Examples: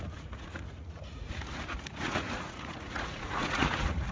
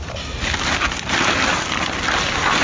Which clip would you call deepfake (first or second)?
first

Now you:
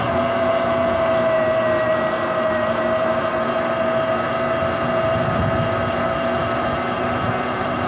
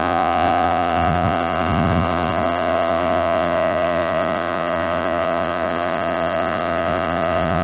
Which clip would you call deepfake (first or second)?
second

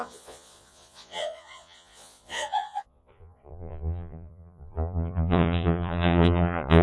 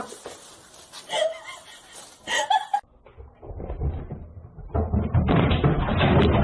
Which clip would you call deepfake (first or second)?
first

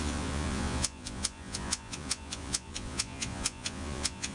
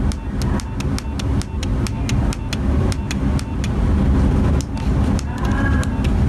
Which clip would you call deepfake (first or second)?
first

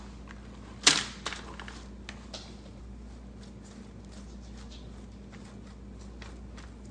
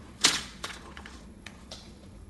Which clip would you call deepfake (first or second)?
second